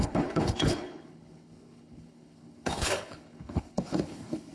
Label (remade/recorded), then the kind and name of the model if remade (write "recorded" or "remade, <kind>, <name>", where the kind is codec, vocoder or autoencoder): remade, codec, HILCodec